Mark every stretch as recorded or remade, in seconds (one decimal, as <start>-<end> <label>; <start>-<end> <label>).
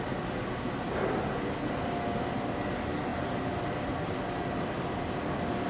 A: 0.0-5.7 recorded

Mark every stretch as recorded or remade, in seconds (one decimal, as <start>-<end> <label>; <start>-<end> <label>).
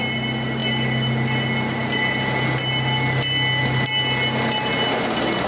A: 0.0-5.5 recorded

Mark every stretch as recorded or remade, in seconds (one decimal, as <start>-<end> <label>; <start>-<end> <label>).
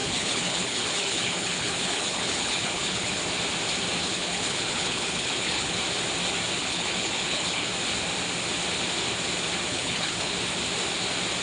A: 0.0-3.2 remade; 3.2-4.0 recorded; 4.0-5.8 remade; 5.8-6.6 recorded; 6.6-7.7 remade; 7.7-9.7 recorded; 9.7-10.4 remade; 10.4-11.4 recorded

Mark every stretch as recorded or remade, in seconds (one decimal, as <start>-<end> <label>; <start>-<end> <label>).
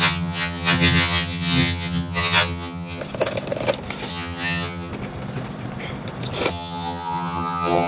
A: 0.0-3.0 remade; 3.0-4.1 recorded; 4.1-4.9 remade; 4.9-6.5 recorded; 6.5-7.9 remade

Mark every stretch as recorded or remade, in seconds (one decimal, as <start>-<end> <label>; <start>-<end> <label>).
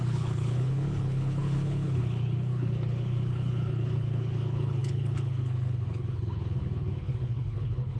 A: 0.0-8.0 remade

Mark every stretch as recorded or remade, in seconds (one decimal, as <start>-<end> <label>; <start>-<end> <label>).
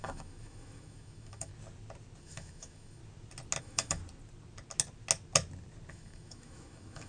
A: 0.0-1.5 remade; 1.5-2.2 recorded; 2.2-3.0 remade; 3.0-3.6 recorded; 3.6-4.0 remade; 4.0-5.9 recorded; 5.9-7.1 remade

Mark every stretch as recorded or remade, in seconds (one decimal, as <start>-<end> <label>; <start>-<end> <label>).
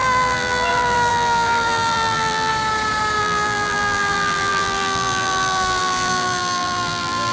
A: 0.0-2.5 remade; 2.5-3.2 recorded; 3.2-7.3 remade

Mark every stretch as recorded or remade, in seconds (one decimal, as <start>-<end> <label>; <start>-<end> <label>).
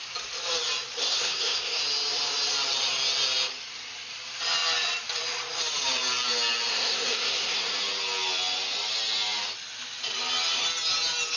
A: 0.0-1.0 recorded; 1.0-1.8 remade; 1.8-6.7 recorded; 6.7-7.7 remade; 7.7-11.4 recorded